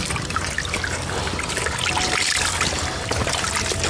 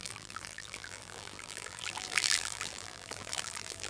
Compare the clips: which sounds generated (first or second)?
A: second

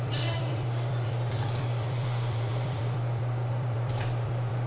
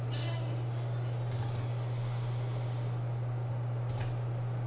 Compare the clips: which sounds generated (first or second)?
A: first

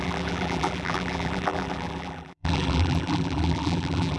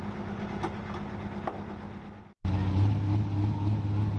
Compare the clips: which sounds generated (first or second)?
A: first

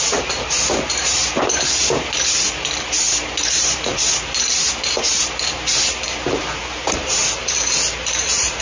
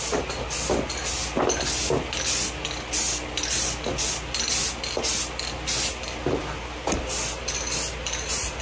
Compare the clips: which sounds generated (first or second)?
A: first